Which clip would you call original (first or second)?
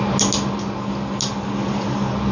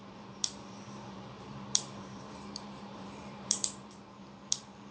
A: first